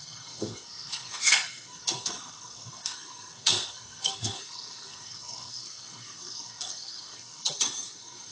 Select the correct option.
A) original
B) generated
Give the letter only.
B